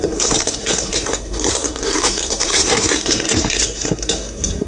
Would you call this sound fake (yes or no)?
yes